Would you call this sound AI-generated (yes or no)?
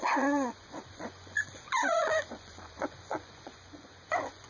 yes